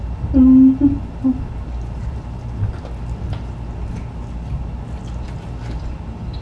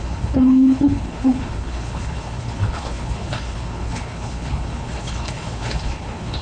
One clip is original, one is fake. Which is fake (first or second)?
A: second